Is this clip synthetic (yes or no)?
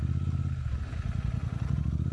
no